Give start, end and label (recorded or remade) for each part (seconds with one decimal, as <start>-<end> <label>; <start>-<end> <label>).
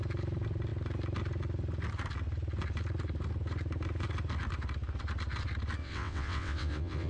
0.0-5.8 recorded; 5.8-7.1 remade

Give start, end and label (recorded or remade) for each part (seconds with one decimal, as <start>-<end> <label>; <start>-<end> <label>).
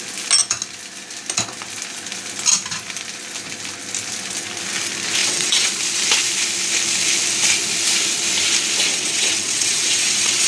0.0-5.2 recorded; 5.2-5.7 remade; 5.7-8.9 recorded; 8.9-10.5 remade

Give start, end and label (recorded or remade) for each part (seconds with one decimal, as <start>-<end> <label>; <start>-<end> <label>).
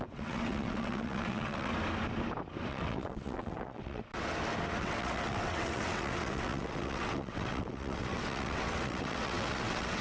0.0-1.7 remade; 1.7-2.7 recorded; 2.7-4.1 remade; 4.1-4.8 recorded; 4.8-10.0 remade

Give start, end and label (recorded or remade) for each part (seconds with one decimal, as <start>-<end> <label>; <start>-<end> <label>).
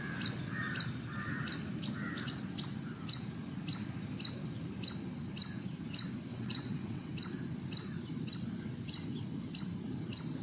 0.0-6.3 recorded; 6.3-7.1 remade; 7.1-10.4 recorded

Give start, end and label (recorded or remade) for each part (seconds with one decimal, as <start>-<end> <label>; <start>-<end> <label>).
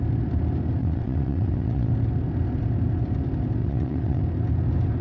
0.0-0.8 recorded; 0.8-1.9 remade; 1.9-3.6 recorded; 3.6-4.2 remade; 4.2-5.0 recorded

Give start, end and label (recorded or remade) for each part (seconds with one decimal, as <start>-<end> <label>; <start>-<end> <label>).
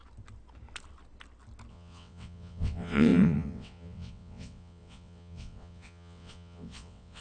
0.0-1.7 recorded; 1.7-7.2 remade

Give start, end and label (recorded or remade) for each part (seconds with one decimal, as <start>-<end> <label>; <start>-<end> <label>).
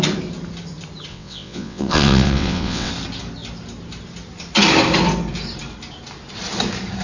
0.0-1.1 recorded; 1.1-2.9 remade; 2.9-7.0 recorded